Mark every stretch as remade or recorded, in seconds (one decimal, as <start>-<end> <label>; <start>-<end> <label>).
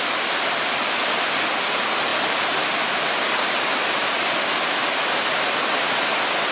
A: 0.0-6.5 recorded